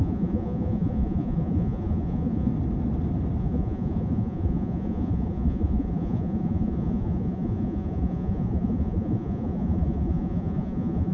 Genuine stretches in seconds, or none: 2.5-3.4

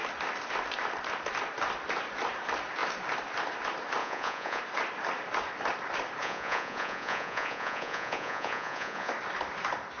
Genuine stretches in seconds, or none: 0.0-4.0; 4.6-6.2; 9.1-10.0

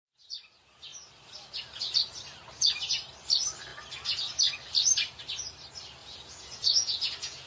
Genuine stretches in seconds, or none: 0.0-6.0